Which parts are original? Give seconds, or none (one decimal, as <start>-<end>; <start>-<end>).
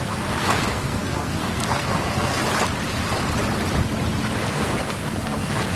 2.4-4.5